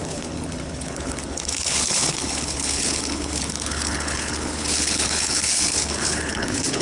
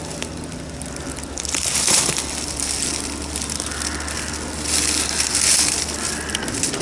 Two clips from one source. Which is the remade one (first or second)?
first